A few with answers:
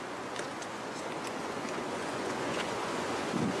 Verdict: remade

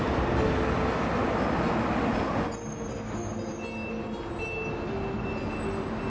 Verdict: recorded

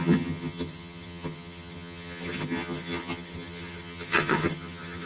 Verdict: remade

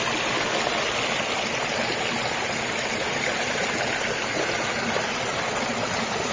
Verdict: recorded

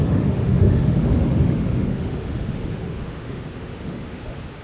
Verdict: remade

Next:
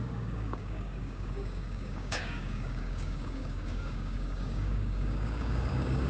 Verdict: remade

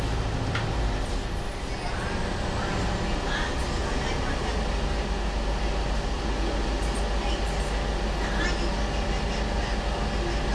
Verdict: recorded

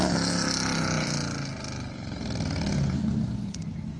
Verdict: recorded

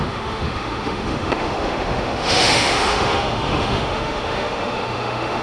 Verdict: remade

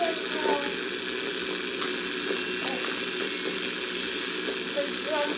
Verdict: recorded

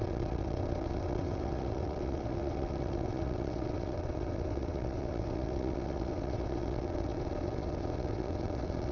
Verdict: remade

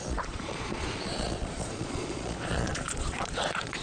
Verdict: remade